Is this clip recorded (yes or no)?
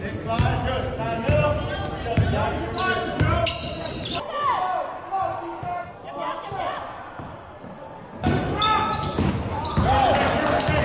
yes